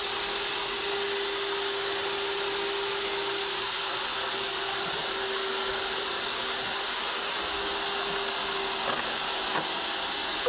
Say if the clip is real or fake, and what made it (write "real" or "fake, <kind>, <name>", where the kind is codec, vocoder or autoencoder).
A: real